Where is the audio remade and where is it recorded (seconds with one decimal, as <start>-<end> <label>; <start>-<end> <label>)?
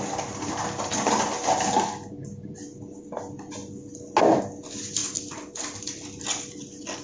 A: 0.0-7.0 recorded